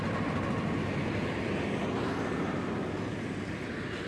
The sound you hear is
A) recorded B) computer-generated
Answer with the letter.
A